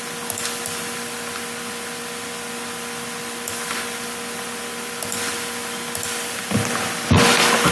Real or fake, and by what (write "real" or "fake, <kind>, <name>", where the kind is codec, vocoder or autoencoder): real